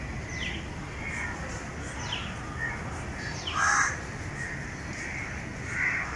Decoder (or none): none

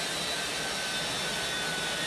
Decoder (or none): none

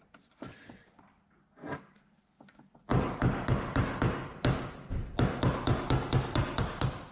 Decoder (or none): none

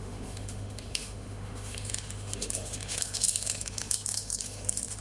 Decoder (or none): autoencoder, DAC-VAE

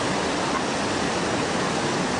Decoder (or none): none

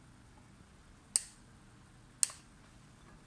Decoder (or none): none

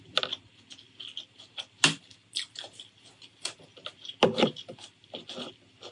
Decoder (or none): none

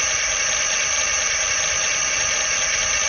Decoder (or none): none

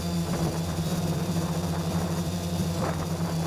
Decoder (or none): vocoder, BigVGAN v2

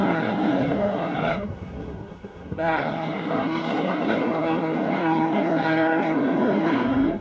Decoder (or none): codec, SNAC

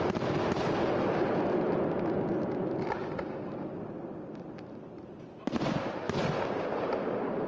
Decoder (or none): none